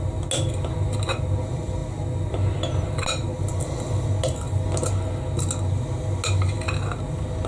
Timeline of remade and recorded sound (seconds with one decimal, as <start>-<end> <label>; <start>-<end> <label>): 0.0-7.5 recorded